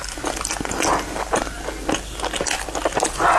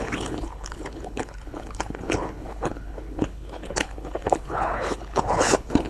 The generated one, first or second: second